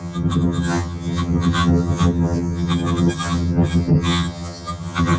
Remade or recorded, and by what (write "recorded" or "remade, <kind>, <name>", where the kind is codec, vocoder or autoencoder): remade, vocoder, HiFi-GAN